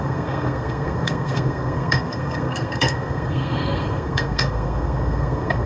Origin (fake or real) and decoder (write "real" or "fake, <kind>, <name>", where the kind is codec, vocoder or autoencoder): fake, codec, SNAC